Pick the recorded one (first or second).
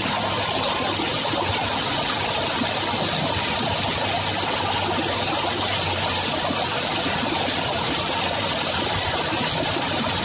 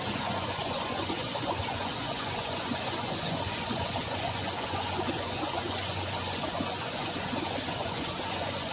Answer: first